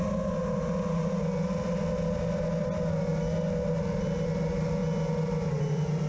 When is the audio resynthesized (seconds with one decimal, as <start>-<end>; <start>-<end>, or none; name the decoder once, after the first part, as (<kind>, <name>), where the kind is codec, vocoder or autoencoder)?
none